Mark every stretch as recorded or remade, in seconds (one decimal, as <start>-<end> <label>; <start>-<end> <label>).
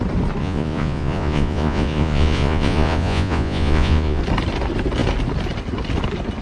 0.0-0.4 recorded; 0.4-4.2 remade; 4.2-6.4 recorded